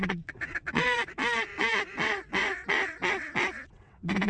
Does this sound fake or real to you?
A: fake